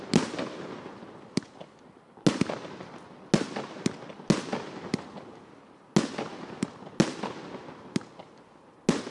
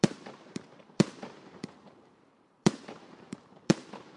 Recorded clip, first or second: first